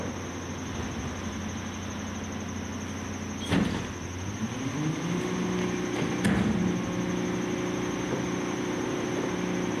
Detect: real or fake real